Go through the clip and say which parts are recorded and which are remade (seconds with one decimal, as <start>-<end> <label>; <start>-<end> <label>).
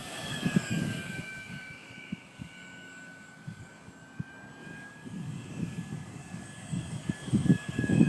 0.0-3.9 remade; 3.9-4.6 recorded; 4.6-8.1 remade